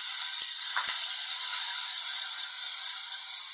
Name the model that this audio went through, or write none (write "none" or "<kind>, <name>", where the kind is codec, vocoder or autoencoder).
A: vocoder, BigVGAN v2